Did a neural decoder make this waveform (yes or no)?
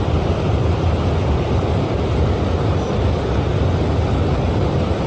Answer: no